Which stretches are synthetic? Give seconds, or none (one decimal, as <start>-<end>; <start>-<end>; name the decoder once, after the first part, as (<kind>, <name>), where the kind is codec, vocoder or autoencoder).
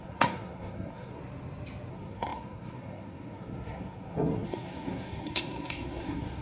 0.0-1.2 (codec, SNAC); 1.9-6.4